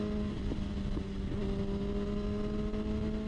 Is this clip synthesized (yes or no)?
no